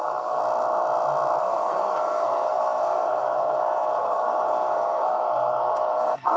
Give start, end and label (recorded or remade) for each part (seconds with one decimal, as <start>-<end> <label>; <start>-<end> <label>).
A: 0.0-0.4 remade; 0.4-1.4 recorded; 1.4-6.4 remade